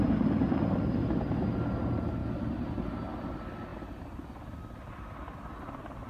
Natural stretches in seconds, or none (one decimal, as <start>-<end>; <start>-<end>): 0.0-2.2; 2.8-6.1